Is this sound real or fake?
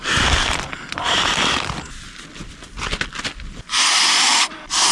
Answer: real